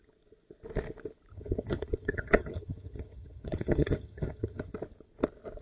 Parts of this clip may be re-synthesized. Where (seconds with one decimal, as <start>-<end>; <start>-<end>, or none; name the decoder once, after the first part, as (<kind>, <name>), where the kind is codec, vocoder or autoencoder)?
1.3-4.7 (vocoder, HiFi-GAN)